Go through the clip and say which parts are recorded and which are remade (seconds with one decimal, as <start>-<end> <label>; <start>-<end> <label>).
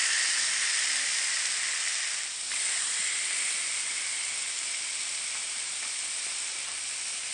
0.0-7.3 recorded